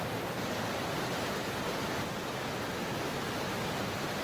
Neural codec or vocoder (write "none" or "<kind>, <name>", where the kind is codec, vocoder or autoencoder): none